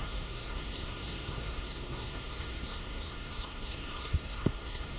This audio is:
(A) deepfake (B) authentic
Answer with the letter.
A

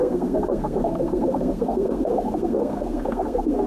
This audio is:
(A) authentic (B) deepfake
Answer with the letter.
B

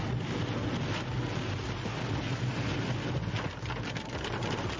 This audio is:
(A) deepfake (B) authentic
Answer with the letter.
B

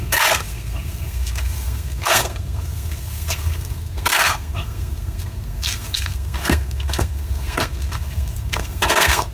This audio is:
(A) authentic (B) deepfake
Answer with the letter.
B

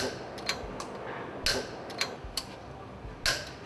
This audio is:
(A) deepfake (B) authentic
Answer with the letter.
B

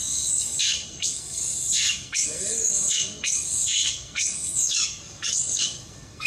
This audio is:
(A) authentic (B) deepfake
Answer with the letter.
B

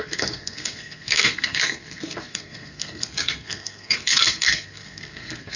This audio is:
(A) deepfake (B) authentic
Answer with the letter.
A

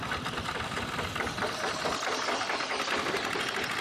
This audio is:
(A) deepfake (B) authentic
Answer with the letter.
B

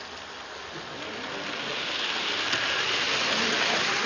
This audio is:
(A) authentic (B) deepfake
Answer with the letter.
A